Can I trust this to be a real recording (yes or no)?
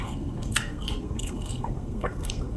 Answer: no